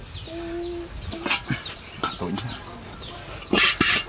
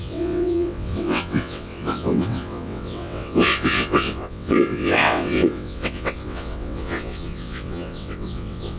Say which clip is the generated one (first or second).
second